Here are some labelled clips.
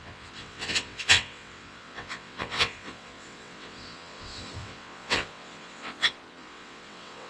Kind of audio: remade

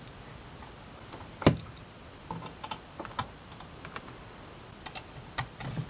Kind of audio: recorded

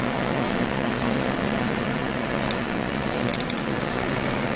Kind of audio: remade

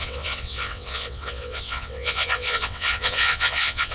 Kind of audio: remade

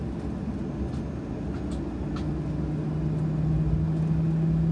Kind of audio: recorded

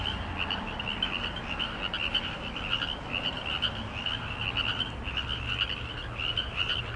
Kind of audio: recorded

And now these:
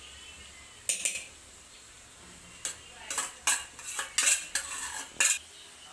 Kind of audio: recorded